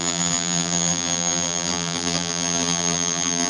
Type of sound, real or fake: fake